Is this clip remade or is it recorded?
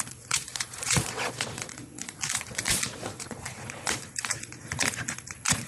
remade